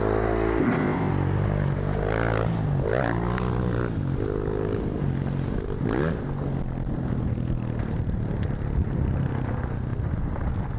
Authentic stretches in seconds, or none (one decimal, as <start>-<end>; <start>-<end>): 0.0-0.6; 1.1-10.8